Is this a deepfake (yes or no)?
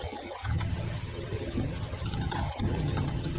yes